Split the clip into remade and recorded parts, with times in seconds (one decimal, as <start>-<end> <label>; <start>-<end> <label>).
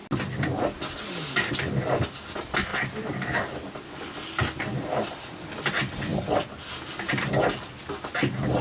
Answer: 0.0-8.6 recorded